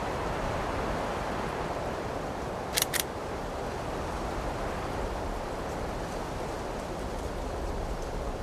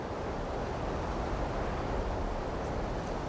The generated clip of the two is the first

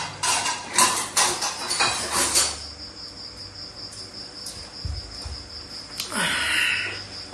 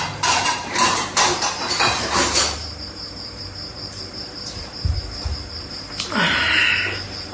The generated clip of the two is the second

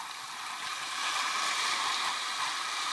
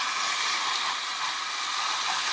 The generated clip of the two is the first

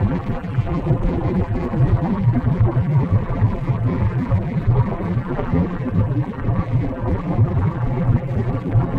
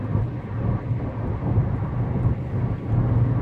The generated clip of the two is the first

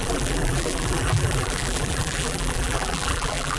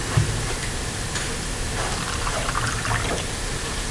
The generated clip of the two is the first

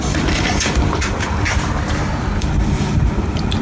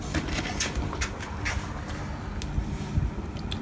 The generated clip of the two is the first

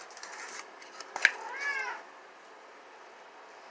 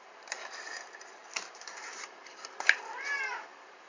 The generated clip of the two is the second